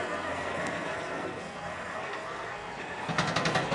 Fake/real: fake